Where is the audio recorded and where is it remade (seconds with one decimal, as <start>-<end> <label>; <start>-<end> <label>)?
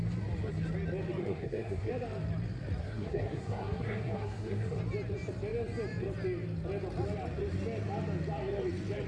0.0-1.2 recorded; 1.2-1.9 remade; 1.9-2.8 recorded; 2.8-4.8 remade; 4.8-9.1 recorded